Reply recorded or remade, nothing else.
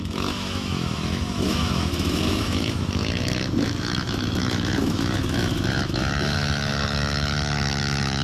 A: remade